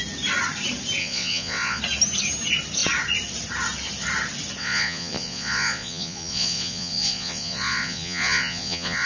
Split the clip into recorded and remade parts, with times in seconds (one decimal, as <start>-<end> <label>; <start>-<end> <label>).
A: 0.0-1.0 recorded; 1.0-1.8 remade; 1.8-4.6 recorded; 4.6-9.1 remade